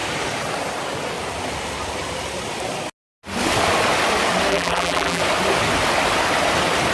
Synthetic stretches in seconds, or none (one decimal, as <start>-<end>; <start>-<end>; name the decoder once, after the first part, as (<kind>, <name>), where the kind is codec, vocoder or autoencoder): 4.5-5.2 (vocoder, BigVGAN v2)